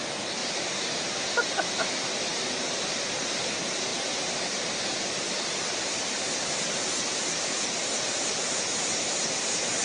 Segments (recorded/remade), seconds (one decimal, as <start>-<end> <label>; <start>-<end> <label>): 0.0-0.4 recorded; 0.4-1.1 remade; 1.1-3.9 recorded; 3.9-6.4 remade; 6.4-9.8 recorded